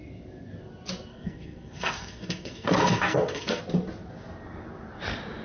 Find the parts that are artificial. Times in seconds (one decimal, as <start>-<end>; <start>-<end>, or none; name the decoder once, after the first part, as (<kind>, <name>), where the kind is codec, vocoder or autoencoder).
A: 1.1-3.6 (codec, SNAC)